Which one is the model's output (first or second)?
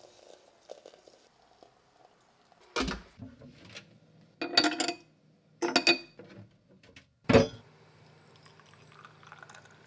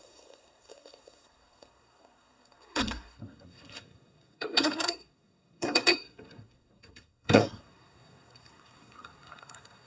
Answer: second